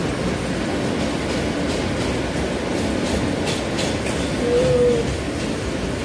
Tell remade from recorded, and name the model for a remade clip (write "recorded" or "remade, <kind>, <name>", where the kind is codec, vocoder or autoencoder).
recorded